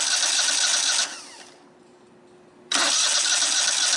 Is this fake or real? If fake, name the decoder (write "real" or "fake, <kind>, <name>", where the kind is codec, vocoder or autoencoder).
real